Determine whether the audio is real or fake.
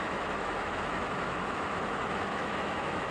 fake